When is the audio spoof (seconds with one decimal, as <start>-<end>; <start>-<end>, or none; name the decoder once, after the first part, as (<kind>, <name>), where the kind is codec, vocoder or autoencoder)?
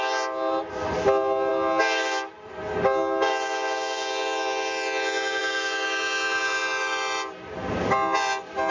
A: none